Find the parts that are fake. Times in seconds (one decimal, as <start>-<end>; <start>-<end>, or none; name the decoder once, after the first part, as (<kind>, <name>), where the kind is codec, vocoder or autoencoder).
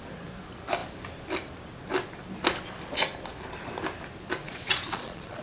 4.4-5.4 (vocoder, Vocos)